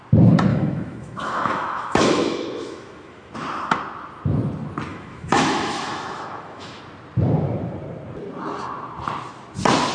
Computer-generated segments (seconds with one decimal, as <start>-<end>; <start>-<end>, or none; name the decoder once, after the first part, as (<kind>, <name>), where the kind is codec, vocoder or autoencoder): 0.5-3.3 (autoencoder, DAC-VAE); 4.9-6.8

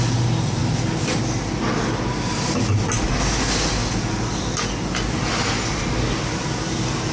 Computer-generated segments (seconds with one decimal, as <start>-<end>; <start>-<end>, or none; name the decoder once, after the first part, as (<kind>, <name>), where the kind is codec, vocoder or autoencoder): none

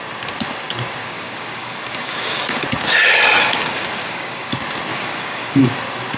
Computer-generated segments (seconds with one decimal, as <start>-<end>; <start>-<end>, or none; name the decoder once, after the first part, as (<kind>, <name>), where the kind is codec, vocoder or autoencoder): 1.0-2.6 (codec, DAC); 3.4-4.5; 4.9-5.6

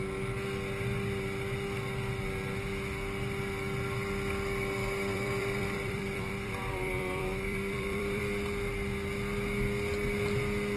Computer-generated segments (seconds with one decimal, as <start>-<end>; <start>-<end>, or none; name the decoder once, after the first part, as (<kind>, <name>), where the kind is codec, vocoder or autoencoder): 5.1-8.2 (vocoder, BigVGAN v2)

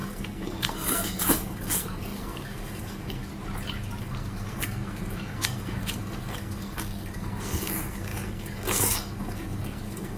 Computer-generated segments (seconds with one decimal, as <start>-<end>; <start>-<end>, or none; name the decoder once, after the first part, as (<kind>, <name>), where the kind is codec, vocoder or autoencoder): 0.0-3.3 (codec, SNAC); 4.0-10.2